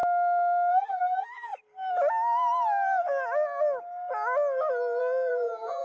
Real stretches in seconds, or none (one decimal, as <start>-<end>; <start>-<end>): 0.0-0.7; 1.5-5.0